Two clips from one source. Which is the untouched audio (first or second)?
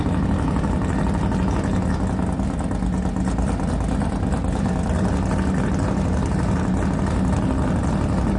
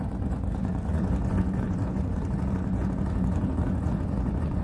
first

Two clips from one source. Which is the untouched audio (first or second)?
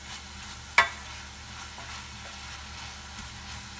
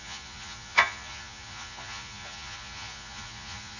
first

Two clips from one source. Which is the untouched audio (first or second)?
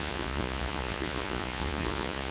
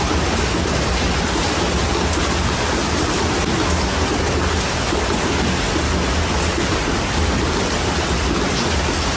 second